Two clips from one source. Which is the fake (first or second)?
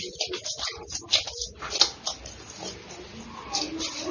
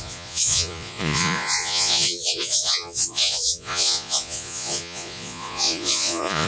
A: second